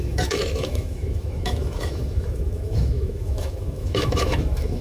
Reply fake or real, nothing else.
fake